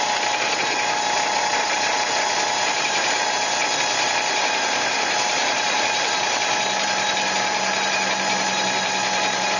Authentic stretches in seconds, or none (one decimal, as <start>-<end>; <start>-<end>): 0.0-9.6

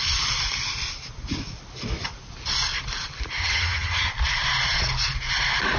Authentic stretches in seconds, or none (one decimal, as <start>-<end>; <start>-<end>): 0.0-3.4; 4.1-5.8

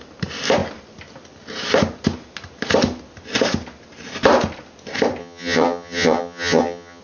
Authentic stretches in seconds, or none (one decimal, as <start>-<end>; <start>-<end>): 0.0-5.2